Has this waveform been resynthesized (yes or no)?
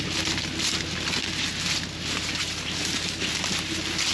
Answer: no